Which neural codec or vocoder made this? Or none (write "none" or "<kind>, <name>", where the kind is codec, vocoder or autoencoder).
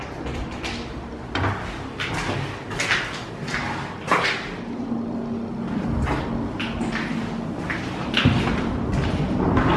none